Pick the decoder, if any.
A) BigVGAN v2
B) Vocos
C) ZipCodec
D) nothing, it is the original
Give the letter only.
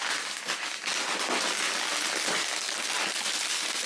D